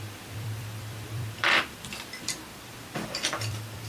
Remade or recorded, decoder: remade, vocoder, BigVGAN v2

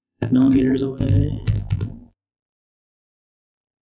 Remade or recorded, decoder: remade, vocoder, BigVGAN v2